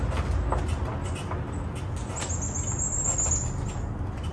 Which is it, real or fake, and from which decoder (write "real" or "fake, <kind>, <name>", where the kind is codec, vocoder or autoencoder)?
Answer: real